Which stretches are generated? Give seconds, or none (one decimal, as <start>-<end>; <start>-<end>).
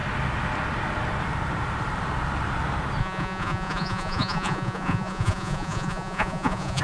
3.0-6.8